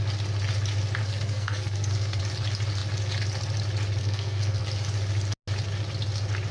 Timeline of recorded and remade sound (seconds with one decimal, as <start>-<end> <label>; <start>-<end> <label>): 0.0-1.0 recorded; 1.0-2.2 remade; 2.2-4.0 recorded; 4.0-4.6 remade; 4.6-6.5 recorded